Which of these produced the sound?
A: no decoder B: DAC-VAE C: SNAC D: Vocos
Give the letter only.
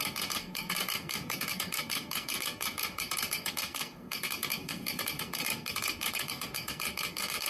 C